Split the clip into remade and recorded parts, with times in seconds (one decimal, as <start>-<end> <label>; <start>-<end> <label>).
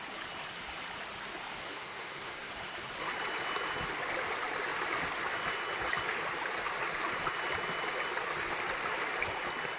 0.0-1.6 recorded; 1.6-2.5 remade; 2.5-9.8 recorded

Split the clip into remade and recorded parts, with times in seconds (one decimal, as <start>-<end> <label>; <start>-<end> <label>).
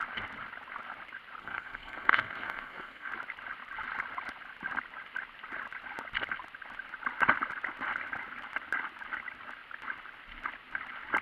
0.0-1.4 recorded; 1.4-3.1 remade; 3.1-11.2 recorded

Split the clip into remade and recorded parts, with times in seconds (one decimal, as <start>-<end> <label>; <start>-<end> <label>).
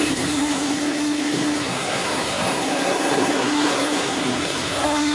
0.0-5.1 remade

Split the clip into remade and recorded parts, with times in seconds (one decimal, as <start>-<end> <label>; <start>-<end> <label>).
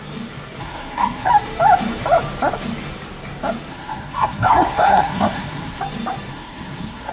0.0-0.6 recorded; 0.6-1.3 remade; 1.3-3.7 recorded; 3.7-5.8 remade; 5.8-6.3 recorded; 6.3-7.1 remade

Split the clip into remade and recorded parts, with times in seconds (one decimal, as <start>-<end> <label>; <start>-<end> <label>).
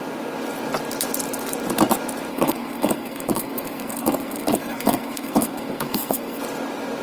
0.0-2.3 recorded; 2.3-6.4 remade; 6.4-7.0 recorded